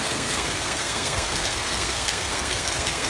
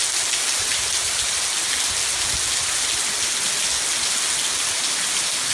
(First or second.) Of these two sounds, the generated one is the first